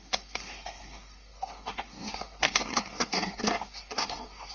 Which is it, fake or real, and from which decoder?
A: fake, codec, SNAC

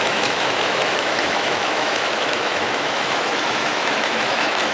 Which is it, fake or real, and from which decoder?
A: fake, autoencoder, DAC-VAE